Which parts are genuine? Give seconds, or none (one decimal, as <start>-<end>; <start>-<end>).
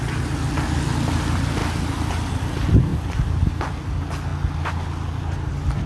0.0-5.9